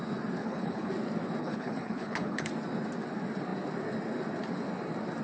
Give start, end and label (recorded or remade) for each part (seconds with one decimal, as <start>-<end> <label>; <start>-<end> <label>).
0.0-0.4 recorded; 0.4-0.9 remade; 0.9-1.4 recorded; 1.4-2.5 remade; 2.5-5.2 recorded